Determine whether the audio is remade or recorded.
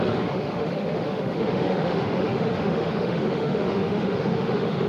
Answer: remade